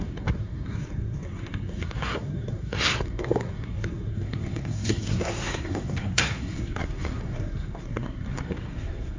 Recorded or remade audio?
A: remade